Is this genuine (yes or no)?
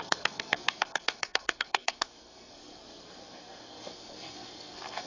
no